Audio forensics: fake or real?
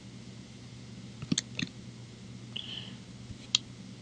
real